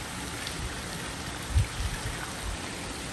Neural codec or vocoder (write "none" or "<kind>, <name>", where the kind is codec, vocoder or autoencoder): none